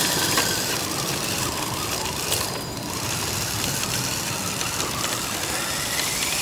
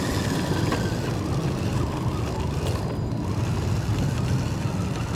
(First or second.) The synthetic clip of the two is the first